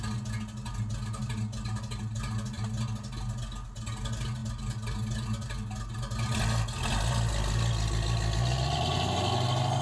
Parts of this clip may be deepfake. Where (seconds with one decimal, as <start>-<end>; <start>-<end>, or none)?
none